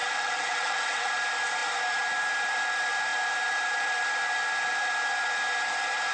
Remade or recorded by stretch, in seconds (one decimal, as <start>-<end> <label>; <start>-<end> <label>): 0.0-1.1 remade; 1.1-6.1 recorded